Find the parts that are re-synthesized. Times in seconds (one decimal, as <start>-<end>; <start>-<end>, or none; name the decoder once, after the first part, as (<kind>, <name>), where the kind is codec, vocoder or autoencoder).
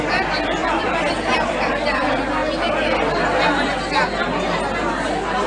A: 0.6-1.7 (vocoder, BigVGAN v2)